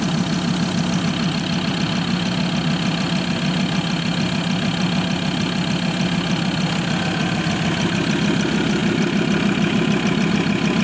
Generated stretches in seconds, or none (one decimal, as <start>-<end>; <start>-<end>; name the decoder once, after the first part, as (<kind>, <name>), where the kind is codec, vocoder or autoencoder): none